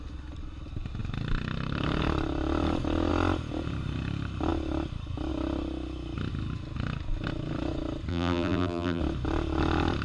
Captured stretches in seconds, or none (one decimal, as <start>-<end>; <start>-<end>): 0.0-8.1; 9.0-10.0